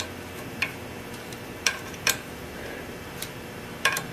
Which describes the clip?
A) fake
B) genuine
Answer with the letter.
A